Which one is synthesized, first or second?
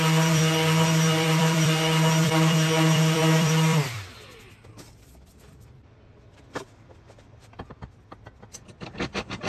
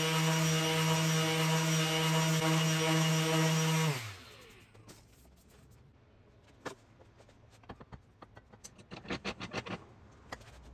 first